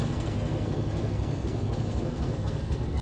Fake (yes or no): yes